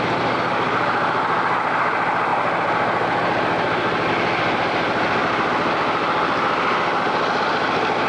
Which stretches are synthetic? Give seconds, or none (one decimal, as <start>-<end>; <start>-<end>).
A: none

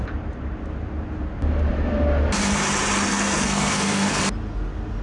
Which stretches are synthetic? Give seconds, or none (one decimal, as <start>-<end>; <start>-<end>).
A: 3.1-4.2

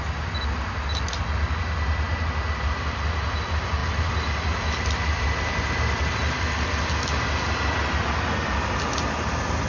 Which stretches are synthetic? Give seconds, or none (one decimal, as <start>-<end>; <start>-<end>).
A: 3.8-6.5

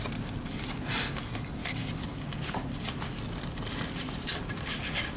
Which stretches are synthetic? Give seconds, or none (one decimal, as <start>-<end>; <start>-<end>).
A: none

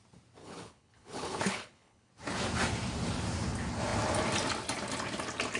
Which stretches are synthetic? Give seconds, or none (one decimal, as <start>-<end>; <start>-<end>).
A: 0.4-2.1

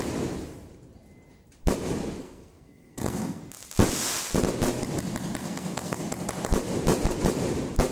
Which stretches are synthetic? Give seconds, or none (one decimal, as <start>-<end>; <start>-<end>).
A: 2.2-3.4; 5.4-6.0

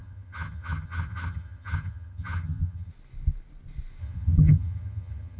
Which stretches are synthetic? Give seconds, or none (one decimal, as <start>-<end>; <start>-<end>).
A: 0.0-2.9; 4.0-5.4